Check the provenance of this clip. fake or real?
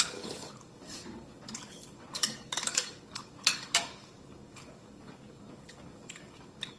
fake